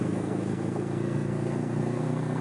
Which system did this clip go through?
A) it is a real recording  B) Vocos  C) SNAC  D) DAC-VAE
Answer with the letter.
C